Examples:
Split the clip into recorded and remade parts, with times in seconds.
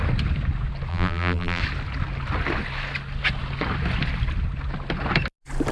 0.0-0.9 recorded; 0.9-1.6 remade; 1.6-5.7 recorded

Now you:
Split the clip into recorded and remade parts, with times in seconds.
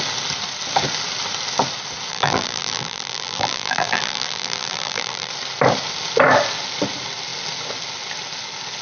0.0-2.1 recorded; 2.1-5.3 remade; 5.3-8.8 recorded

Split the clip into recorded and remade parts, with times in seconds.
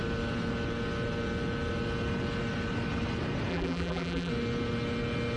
0.0-3.5 recorded; 3.5-4.3 remade; 4.3-5.4 recorded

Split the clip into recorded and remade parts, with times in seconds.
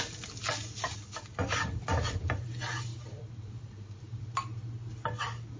0.0-2.9 recorded; 2.9-4.2 remade; 4.2-5.6 recorded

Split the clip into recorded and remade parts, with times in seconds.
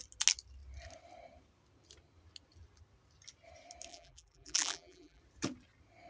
0.0-3.9 recorded; 3.9-5.2 remade; 5.2-6.1 recorded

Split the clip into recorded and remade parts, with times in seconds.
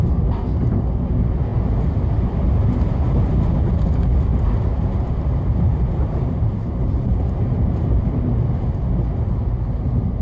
0.0-4.3 recorded; 4.3-8.0 remade; 8.0-10.2 recorded